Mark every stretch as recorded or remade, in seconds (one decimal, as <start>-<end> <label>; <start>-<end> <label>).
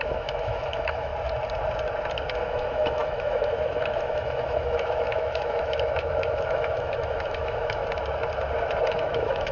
0.0-1.1 remade; 1.1-2.4 recorded; 2.4-7.8 remade; 7.8-8.9 recorded; 8.9-9.5 remade